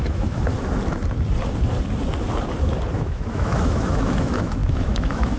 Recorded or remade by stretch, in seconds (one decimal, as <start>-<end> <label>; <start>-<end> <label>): 0.0-0.5 remade; 0.5-2.9 recorded; 2.9-5.4 remade